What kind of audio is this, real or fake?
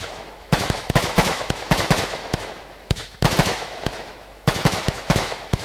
fake